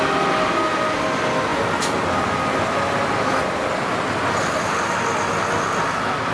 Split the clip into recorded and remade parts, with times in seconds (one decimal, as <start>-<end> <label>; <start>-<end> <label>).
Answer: 0.0-6.3 recorded